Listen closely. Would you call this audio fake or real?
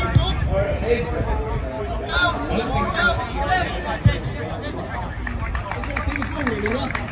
real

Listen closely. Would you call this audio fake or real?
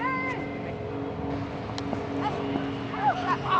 real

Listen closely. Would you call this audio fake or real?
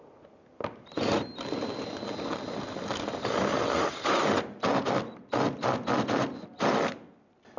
real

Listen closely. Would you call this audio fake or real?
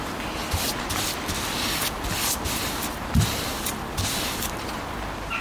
real